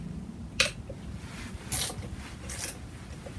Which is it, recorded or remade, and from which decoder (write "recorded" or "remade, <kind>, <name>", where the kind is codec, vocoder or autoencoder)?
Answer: recorded